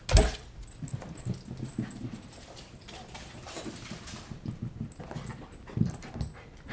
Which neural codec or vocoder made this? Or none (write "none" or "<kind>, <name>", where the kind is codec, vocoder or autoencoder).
none